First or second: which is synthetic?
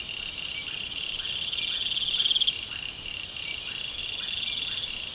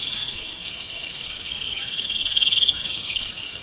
second